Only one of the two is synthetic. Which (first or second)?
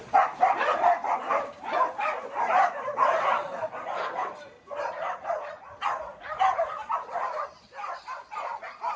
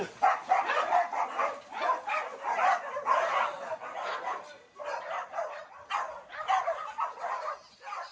first